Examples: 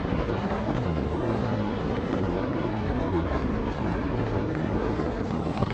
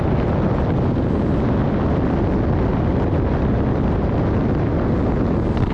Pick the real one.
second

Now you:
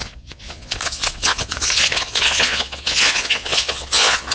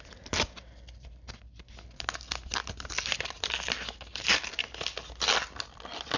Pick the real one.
second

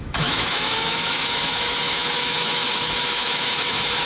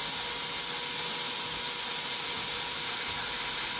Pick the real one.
second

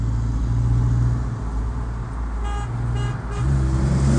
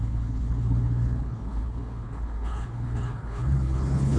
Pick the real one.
first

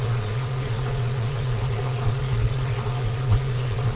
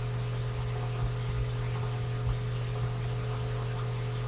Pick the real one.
second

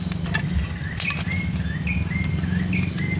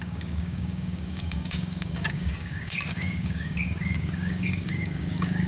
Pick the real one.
first